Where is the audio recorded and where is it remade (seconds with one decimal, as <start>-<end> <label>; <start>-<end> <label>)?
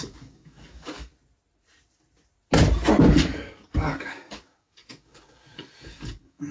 0.0-1.1 remade; 1.1-3.1 recorded; 3.1-6.5 remade